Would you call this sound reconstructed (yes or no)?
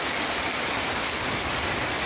no